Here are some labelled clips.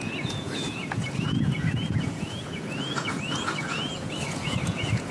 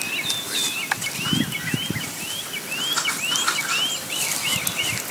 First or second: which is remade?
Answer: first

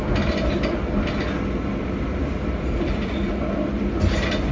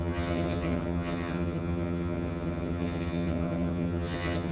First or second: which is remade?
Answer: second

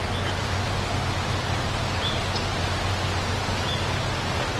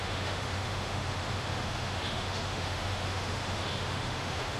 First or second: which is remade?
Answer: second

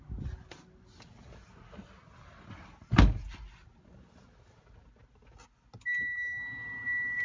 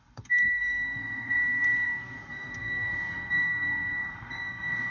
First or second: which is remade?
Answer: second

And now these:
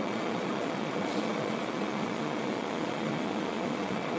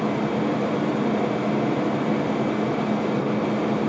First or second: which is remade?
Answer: first